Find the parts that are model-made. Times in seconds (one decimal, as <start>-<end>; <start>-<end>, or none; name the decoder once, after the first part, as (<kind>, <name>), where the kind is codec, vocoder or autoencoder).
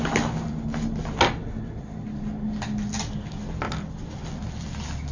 none